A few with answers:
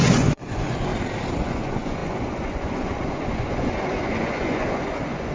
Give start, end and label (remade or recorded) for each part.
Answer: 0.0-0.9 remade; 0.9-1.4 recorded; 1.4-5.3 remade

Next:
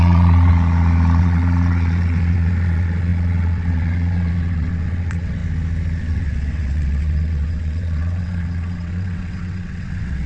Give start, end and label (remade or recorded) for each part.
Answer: 0.0-0.5 remade; 0.5-1.2 recorded; 1.2-5.4 remade; 5.4-6.0 recorded; 6.0-10.3 remade

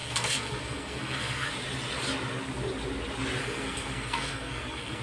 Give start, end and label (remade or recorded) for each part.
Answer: 0.0-1.5 remade; 1.5-3.4 recorded; 3.4-5.0 remade